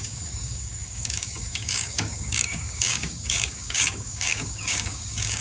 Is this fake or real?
fake